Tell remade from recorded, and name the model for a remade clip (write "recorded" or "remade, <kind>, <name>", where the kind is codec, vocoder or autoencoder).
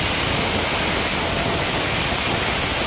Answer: recorded